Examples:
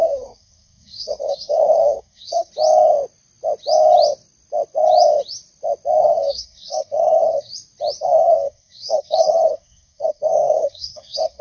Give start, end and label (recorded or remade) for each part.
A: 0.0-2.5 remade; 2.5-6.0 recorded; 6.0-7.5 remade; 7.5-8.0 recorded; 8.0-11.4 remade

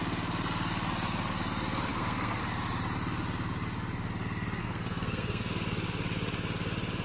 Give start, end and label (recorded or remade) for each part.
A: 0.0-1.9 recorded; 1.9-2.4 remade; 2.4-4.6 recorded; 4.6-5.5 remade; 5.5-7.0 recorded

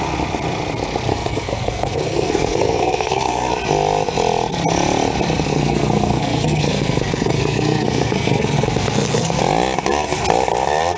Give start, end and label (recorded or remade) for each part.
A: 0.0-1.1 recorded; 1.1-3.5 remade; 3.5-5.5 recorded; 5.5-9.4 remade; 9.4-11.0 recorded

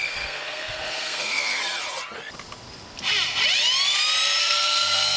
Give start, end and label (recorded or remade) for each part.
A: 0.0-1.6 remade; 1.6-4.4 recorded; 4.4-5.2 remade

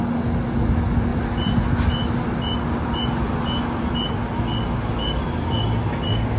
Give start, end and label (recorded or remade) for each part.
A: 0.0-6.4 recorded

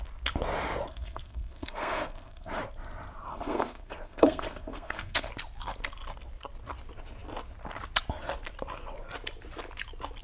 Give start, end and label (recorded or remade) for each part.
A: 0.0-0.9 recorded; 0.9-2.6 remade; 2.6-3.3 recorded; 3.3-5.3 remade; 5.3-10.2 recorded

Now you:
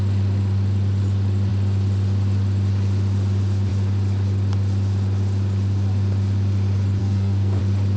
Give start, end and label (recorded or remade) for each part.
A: 0.0-7.0 recorded; 7.0-7.6 remade; 7.6-8.0 recorded